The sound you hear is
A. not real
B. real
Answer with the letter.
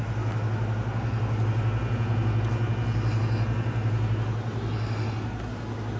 B